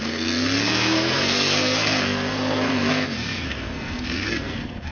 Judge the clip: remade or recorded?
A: remade